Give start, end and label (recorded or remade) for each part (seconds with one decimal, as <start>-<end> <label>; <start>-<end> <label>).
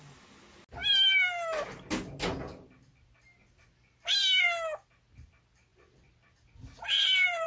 0.0-5.7 recorded; 5.7-7.5 remade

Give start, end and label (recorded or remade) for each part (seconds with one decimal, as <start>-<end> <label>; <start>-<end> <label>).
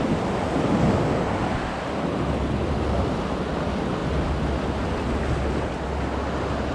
0.0-6.7 recorded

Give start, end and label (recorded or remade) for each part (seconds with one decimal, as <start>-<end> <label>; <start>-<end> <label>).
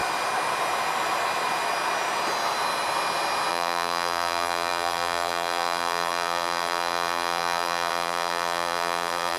0.0-3.5 recorded; 3.5-9.4 remade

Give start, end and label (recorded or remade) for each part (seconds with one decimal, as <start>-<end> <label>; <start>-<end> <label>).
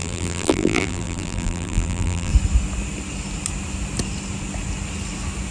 0.0-2.3 remade; 2.3-5.5 recorded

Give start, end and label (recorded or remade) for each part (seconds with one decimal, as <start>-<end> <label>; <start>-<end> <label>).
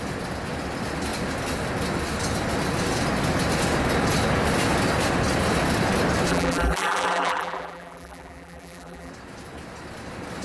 0.0-6.3 recorded; 6.3-9.1 remade; 9.1-10.4 recorded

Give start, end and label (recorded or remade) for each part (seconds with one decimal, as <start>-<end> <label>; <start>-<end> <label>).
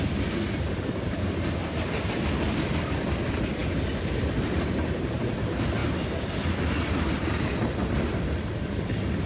0.0-1.6 remade; 1.6-2.3 recorded; 2.3-5.8 remade; 5.8-6.3 recorded; 6.3-9.3 remade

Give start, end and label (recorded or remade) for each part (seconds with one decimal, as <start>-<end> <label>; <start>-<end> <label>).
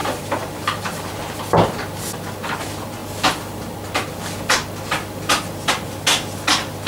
0.0-1.2 remade; 1.2-6.9 recorded